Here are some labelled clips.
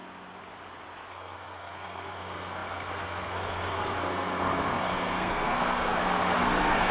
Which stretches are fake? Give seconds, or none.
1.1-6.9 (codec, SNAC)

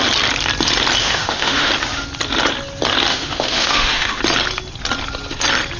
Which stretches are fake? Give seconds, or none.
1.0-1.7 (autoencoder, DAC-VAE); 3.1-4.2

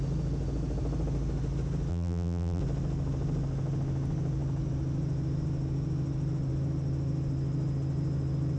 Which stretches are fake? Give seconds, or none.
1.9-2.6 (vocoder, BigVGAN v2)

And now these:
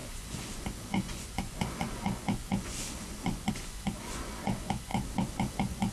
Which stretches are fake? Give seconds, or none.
0.0-4.9 (vocoder, Vocos); 5.5-5.9

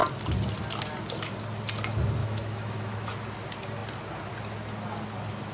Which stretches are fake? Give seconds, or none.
2.2-3.1 (autoencoder, DAC-VAE)

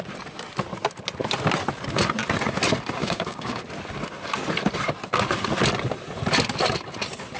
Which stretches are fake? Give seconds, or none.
3.0-3.6 (codec, DAC)